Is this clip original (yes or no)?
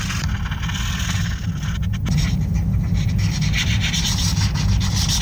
yes